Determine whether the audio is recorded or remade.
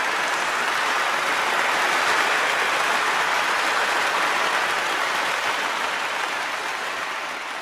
recorded